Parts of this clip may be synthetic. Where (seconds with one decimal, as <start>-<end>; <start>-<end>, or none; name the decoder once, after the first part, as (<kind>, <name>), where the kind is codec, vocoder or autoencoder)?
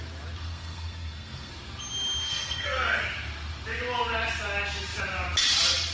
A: 0.4-1.5 (codec, SNAC); 2.3-3.0